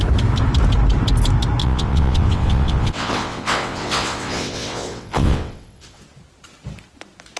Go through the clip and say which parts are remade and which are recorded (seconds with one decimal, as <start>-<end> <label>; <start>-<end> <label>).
0.0-1.6 recorded; 1.6-6.0 remade; 6.0-7.4 recorded